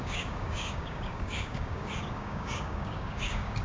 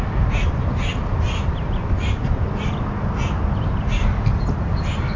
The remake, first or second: first